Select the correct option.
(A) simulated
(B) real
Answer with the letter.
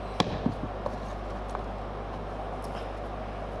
B